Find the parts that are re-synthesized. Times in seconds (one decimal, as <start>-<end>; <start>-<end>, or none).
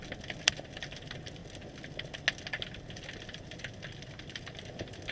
none